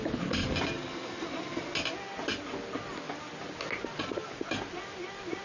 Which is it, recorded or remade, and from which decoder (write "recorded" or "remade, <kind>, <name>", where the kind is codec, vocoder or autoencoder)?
recorded